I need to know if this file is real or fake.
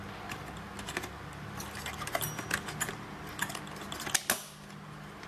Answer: real